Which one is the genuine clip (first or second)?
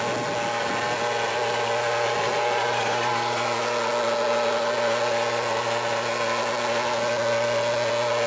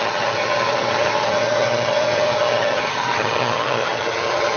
first